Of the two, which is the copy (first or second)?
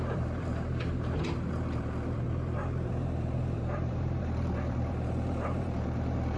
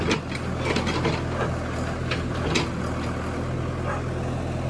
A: first